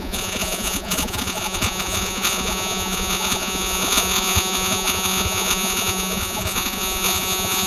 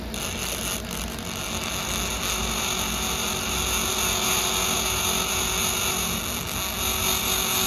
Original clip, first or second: second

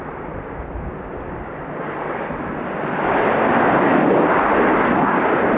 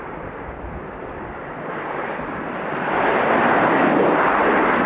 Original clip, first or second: first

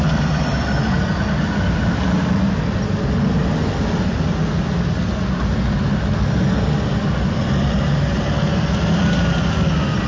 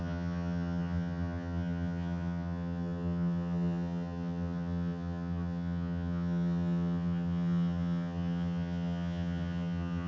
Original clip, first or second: first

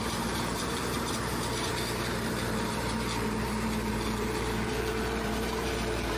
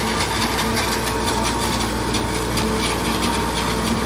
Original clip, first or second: second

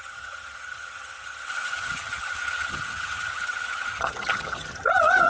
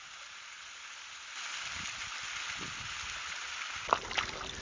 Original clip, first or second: second